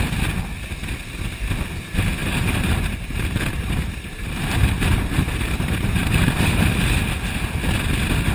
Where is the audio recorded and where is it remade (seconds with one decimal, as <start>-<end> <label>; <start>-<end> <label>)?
0.0-2.2 recorded; 2.2-7.0 remade; 7.0-8.3 recorded